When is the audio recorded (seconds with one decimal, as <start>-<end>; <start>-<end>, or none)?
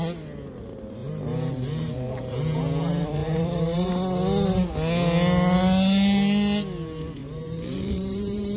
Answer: 0.0-1.0; 2.6-3.2; 3.9-7.2